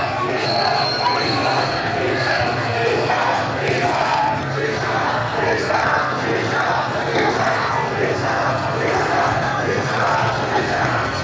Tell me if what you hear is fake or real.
fake